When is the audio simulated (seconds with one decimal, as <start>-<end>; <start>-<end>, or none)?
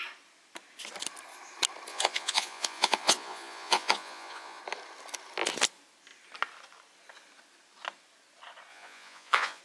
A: 1.9-4.6; 8.7-9.6